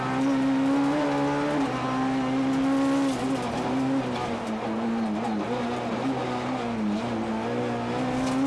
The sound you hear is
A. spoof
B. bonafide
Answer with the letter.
B